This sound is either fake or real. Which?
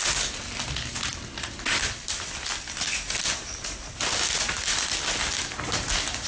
real